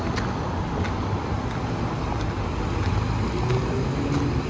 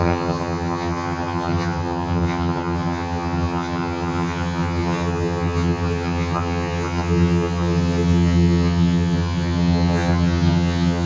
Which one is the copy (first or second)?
second